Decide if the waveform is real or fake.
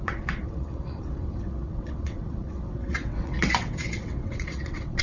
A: fake